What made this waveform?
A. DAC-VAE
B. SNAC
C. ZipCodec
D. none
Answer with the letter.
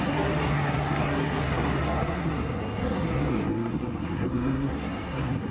B